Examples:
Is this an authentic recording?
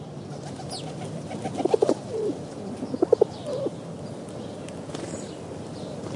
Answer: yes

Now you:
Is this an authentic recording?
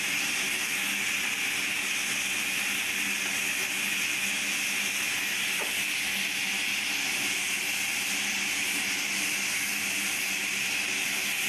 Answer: yes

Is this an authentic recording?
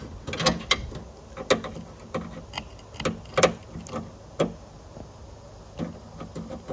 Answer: yes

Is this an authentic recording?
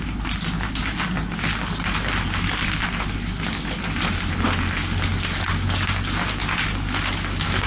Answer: yes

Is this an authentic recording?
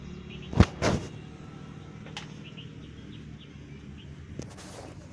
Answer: yes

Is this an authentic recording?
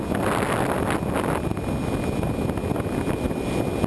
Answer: yes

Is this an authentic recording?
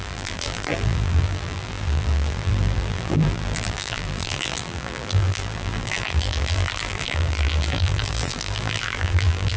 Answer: no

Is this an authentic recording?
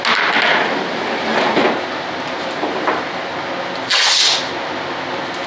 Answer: yes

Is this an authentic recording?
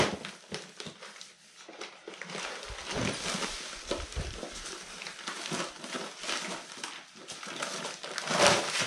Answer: yes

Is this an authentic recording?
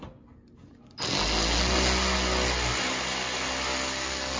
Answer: yes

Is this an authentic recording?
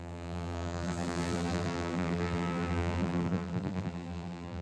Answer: no